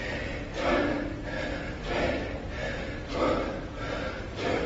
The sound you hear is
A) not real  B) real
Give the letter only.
A